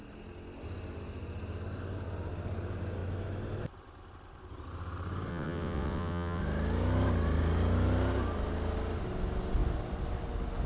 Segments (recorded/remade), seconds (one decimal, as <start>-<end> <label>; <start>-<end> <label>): 0.0-5.3 recorded; 5.3-6.4 remade; 6.4-10.7 recorded